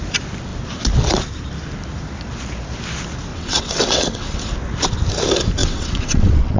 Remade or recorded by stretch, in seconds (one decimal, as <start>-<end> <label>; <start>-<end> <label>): 0.0-3.3 recorded; 3.3-4.5 remade; 4.5-5.6 recorded; 5.6-6.6 remade